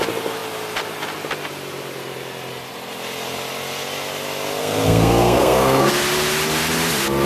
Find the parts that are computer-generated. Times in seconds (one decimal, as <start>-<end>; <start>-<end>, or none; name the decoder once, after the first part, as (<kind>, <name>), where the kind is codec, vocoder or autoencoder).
4.6-5.9 (codec, SNAC)